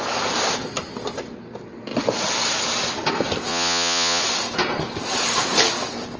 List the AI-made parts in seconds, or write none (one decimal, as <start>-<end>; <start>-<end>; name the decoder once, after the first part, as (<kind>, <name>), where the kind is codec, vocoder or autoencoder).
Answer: 3.5-4.2 (vocoder, Vocos)